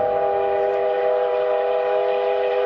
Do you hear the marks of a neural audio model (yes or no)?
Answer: no